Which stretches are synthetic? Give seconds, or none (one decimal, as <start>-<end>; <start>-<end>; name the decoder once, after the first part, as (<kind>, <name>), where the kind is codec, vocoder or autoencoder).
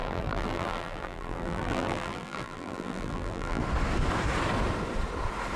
0.0-3.6 (vocoder, BigVGAN v2)